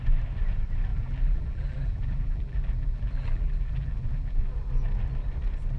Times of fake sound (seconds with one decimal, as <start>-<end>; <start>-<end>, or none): 0.9-4.4